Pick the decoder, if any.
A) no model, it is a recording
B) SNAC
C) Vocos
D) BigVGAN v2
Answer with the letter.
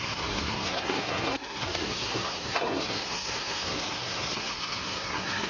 B